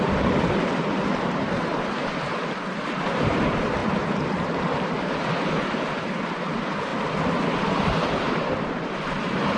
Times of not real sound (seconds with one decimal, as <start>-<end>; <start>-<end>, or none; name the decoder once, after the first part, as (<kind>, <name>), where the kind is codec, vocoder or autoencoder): 0.0-6.9 (vocoder, BigVGAN v2); 7.5-9.6